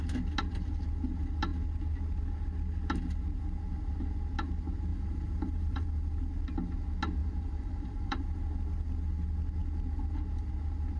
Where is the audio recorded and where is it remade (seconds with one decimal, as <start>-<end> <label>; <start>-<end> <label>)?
0.0-4.9 recorded; 4.9-5.9 remade; 5.9-7.2 recorded; 7.2-8.2 remade; 8.2-11.0 recorded